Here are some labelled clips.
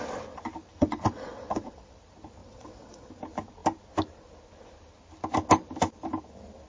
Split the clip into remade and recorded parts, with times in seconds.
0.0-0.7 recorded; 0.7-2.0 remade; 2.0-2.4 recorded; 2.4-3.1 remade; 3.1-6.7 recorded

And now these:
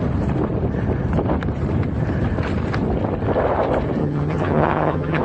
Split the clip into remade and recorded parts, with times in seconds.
0.0-4.0 recorded; 4.0-5.2 remade

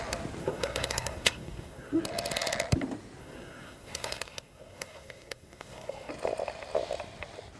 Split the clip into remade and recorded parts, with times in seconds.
0.0-0.4 recorded; 0.4-2.0 remade; 2.0-3.2 recorded; 3.2-6.1 remade; 6.1-7.6 recorded

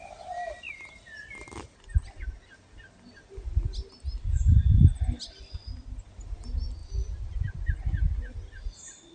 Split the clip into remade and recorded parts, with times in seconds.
0.0-9.1 recorded